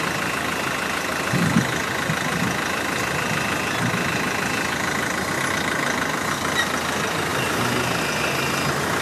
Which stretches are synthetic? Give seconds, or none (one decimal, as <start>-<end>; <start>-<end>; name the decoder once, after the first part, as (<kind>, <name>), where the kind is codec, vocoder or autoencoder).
none